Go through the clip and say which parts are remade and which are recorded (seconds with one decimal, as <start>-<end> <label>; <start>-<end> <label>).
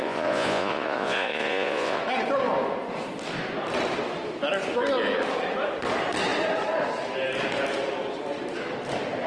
0.0-2.0 remade; 2.0-9.3 recorded